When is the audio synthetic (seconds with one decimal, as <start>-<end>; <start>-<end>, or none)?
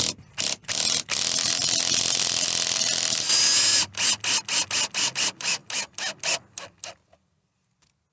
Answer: none